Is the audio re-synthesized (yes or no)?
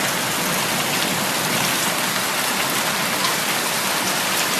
yes